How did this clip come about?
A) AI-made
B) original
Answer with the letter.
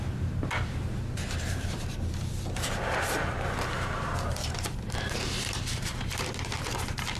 A